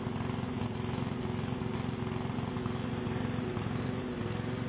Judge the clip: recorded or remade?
recorded